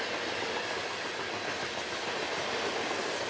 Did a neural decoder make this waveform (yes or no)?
no